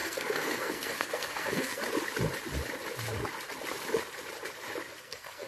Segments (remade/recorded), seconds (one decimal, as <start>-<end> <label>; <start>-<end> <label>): 0.0-1.8 remade; 1.8-5.0 recorded; 5.0-5.5 remade